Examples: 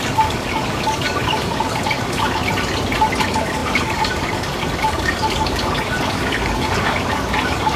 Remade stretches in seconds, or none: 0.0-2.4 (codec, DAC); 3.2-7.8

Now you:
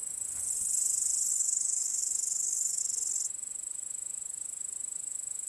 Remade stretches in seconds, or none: 1.3-2.8 (codec, DAC)